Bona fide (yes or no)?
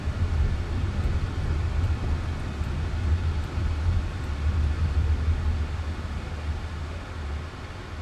yes